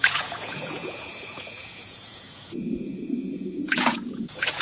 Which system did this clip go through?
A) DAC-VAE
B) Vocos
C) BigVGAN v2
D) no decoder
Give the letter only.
B